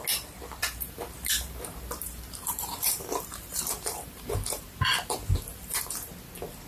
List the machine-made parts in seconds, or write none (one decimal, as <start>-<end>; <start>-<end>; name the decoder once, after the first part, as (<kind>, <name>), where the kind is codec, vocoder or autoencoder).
0.6-4.6 (vocoder, BigVGAN v2); 5.5-6.1